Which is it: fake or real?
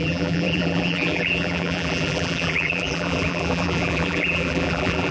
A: fake